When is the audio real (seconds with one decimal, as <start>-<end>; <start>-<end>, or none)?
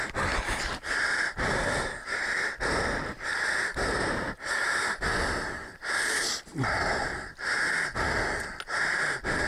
0.0-9.5